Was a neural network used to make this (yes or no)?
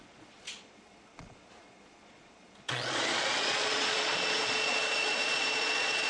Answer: yes